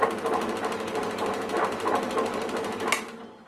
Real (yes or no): yes